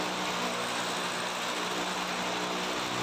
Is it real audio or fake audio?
real